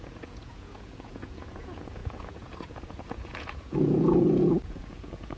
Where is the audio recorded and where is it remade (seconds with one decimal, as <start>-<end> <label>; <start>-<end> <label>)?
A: 0.0-5.4 remade